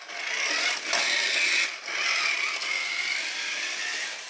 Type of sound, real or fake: real